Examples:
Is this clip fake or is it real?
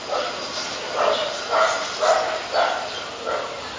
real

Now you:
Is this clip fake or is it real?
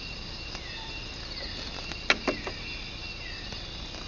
real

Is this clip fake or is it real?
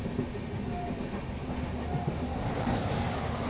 real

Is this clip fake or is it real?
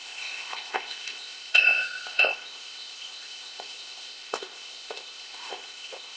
fake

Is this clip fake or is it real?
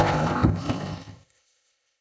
fake